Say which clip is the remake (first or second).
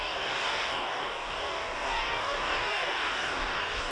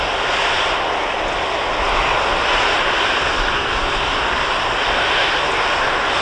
first